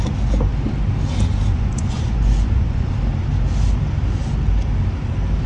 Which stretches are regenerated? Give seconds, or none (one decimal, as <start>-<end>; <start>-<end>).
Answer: 1.5-2.9